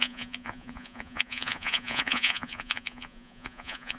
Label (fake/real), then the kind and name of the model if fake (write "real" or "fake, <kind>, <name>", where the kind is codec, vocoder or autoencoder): fake, vocoder, Vocos